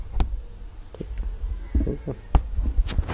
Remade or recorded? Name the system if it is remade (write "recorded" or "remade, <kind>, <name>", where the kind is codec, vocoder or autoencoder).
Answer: recorded